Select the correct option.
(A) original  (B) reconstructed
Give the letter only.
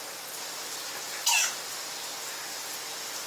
A